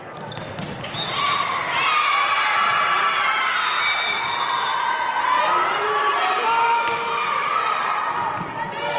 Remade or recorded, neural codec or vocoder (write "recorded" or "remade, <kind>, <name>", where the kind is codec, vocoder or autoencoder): recorded